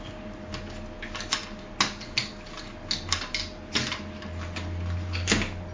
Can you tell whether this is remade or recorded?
recorded